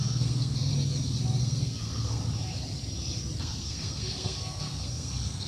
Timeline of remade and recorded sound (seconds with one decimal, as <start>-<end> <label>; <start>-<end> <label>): 0.0-0.7 remade; 0.7-1.4 recorded; 1.4-2.2 remade; 2.2-3.4 recorded; 3.4-5.5 remade